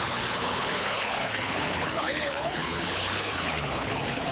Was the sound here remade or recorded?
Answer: remade